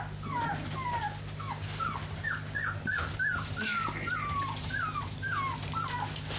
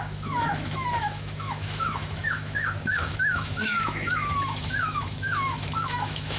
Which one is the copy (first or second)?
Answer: second